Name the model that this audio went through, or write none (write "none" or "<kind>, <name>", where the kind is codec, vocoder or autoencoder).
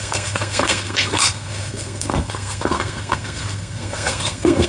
codec, SNAC